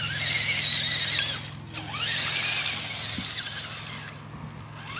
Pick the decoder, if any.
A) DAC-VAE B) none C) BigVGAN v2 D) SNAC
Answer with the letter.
B